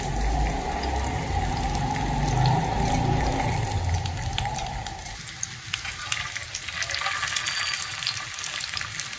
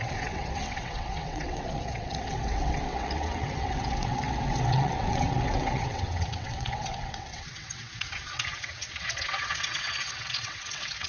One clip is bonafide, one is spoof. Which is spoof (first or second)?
second